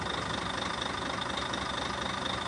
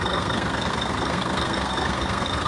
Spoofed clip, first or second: second